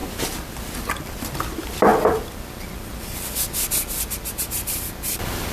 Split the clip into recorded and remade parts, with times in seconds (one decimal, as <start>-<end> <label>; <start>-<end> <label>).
0.0-1.9 remade; 1.9-4.3 recorded; 4.3-5.5 remade